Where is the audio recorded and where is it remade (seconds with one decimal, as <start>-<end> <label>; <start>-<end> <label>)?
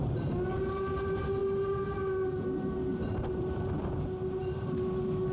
0.0-5.3 recorded